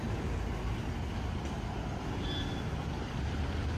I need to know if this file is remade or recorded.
recorded